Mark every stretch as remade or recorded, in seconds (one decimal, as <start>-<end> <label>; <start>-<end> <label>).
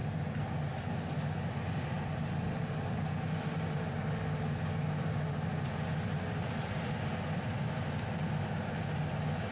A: 0.0-9.5 recorded